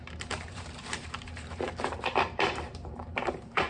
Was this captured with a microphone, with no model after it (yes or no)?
no